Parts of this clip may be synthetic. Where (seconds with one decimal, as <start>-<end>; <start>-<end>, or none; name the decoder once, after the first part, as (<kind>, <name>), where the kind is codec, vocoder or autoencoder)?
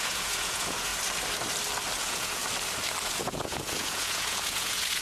0.0-0.9 (vocoder, Vocos); 2.0-2.4; 3.0-5.0